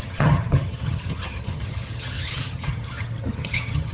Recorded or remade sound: remade